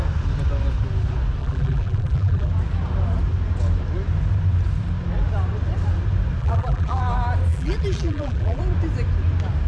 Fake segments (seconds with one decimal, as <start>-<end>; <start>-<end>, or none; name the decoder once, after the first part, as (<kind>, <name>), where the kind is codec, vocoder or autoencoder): 1.4-2.5 (vocoder, BigVGAN v2); 6.4-7.0; 7.5-8.6